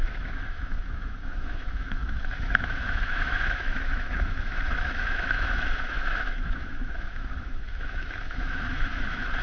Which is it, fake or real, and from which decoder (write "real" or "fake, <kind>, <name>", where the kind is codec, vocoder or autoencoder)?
fake, autoencoder, DAC-VAE